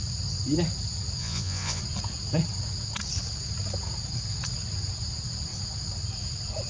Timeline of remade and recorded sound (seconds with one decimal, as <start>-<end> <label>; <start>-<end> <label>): 0.0-1.2 recorded; 1.2-1.8 remade; 1.8-6.7 recorded